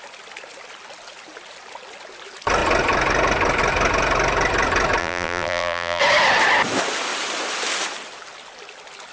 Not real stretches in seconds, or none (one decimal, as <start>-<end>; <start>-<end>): 5.0-6.0